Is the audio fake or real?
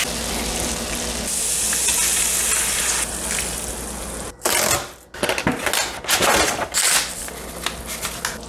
real